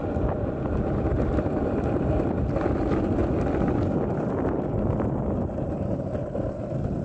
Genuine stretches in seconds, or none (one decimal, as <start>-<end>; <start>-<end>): 0.0-7.0